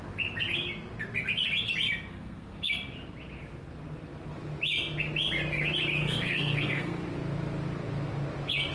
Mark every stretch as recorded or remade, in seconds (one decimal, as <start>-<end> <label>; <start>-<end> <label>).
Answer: 0.0-2.1 recorded; 2.1-2.7 remade; 2.7-6.0 recorded; 6.0-7.0 remade; 7.0-8.7 recorded

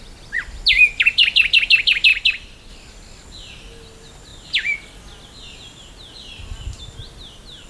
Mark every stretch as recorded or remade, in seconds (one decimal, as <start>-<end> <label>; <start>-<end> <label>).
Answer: 0.0-7.7 recorded

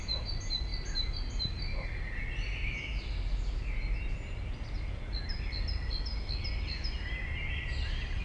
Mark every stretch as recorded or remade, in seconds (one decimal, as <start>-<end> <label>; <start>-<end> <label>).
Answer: 0.0-8.2 recorded